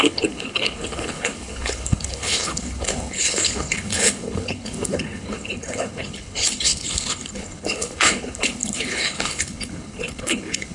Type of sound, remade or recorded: remade